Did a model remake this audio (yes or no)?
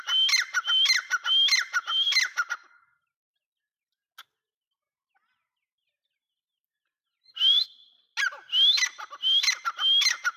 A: no